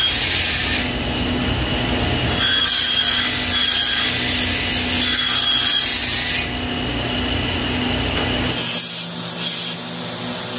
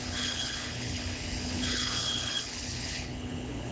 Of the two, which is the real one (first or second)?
first